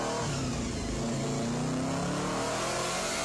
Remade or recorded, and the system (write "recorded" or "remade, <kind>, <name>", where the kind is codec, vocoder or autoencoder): recorded